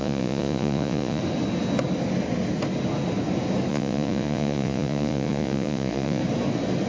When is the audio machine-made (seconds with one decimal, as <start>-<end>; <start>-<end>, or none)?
0.0-1.2; 3.7-6.2